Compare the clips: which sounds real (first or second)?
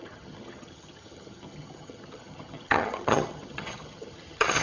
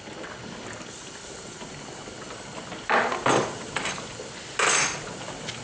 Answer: second